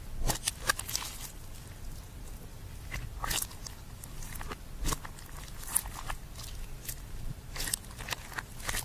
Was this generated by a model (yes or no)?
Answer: no